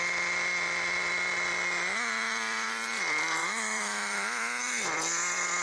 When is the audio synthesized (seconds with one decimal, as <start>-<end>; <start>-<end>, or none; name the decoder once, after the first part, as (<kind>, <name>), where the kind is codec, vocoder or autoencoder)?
3.4-4.6 (autoencoder, DAC-VAE)